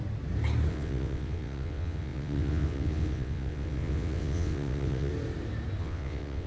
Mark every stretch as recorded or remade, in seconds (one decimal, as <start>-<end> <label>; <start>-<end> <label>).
0.0-0.7 recorded; 0.7-5.1 remade; 5.1-5.8 recorded; 5.8-6.5 remade